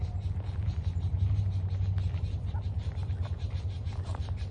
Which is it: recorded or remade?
recorded